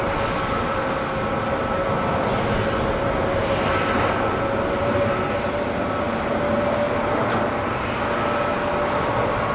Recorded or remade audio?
recorded